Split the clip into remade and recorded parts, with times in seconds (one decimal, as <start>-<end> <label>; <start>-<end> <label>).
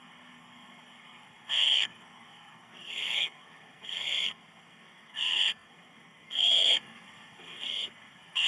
0.0-8.5 remade